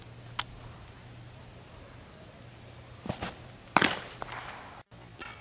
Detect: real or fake real